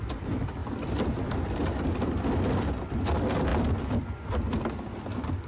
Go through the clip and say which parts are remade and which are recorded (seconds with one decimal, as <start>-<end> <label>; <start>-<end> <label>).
0.0-5.5 recorded